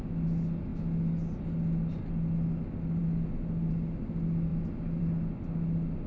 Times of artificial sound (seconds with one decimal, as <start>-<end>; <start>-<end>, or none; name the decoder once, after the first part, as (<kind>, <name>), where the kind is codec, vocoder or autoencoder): none